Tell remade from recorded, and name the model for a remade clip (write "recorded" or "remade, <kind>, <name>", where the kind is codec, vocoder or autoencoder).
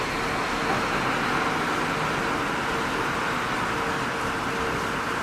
recorded